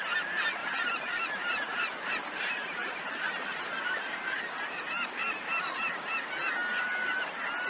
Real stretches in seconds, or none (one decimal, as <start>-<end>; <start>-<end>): 0.0-0.6; 4.4-7.7